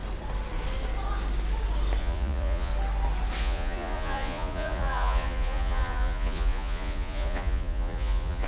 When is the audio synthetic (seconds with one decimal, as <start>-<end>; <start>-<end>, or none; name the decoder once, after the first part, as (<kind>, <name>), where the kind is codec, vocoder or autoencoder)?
2.0-2.7 (vocoder, Vocos); 3.4-8.5